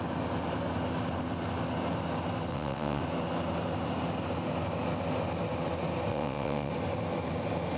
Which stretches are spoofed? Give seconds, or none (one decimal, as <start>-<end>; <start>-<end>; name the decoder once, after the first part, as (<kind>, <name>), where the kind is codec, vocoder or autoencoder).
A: 2.5-3.0 (vocoder, WaveNeXt); 6.1-6.7